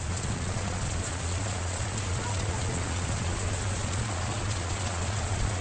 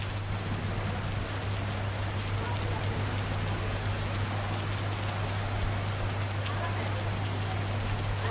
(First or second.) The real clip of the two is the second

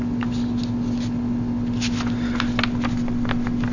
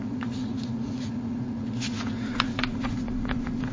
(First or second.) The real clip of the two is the first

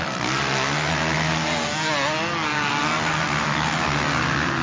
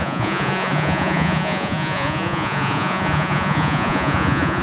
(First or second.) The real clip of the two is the first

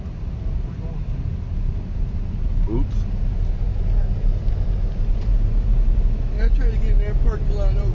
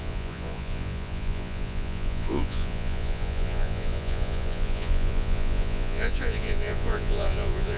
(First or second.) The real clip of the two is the first